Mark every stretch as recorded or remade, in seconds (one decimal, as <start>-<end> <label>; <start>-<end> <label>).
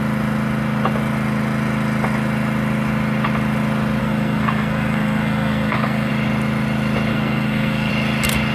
0.0-4.0 recorded; 4.0-6.1 remade; 6.1-7.1 recorded; 7.1-7.9 remade; 7.9-8.5 recorded